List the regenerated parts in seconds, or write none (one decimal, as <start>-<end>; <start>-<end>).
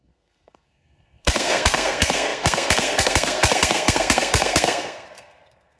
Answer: 0.0-5.8